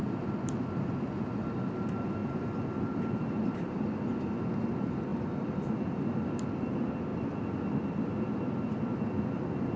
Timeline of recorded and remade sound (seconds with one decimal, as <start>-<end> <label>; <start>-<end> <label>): 0.0-2.2 recorded; 2.2-3.8 remade; 3.8-5.1 recorded; 5.1-6.3 remade; 6.3-7.1 recorded; 7.1-7.6 remade; 7.6-9.8 recorded